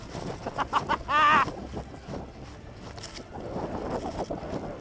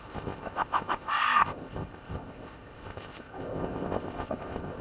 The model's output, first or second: second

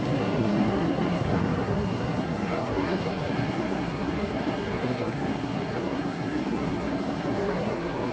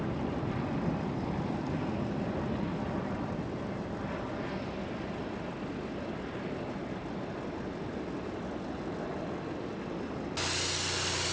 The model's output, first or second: first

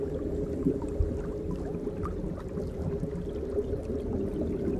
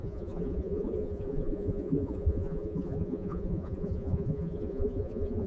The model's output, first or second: second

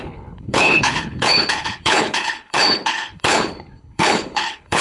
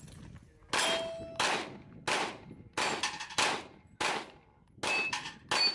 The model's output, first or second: first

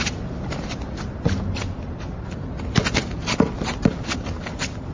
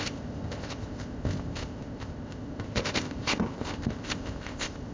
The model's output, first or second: second